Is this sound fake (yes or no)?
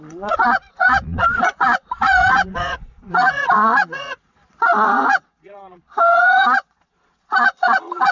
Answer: yes